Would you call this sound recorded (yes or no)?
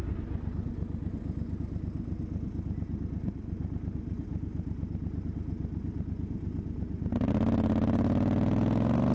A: yes